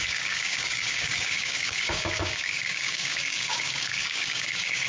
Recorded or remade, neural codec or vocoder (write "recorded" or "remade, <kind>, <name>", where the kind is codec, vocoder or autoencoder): remade, codec, DAC